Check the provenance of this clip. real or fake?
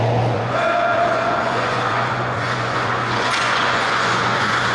fake